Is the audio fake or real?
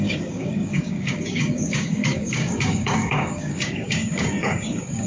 fake